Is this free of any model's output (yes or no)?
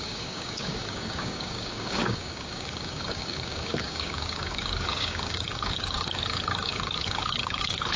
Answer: no